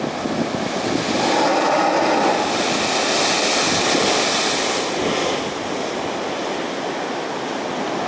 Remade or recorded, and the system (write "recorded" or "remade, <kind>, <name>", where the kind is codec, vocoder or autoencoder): recorded